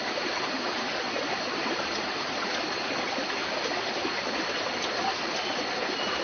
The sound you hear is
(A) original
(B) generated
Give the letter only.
A